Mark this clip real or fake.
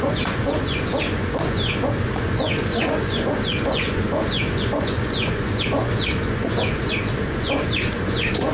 fake